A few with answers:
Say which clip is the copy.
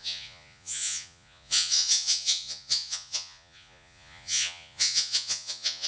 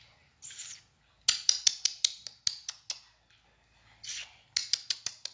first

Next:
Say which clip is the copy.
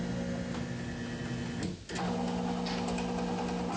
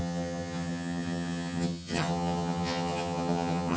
second